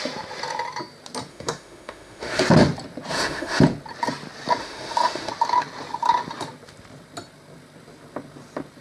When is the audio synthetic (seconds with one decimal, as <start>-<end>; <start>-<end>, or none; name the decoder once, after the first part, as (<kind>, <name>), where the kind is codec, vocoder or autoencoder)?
1.3-2.4 (autoencoder, DAC-VAE); 3.1-3.6; 4.6-5.3